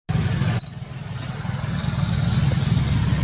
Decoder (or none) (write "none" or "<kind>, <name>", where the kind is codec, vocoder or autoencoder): none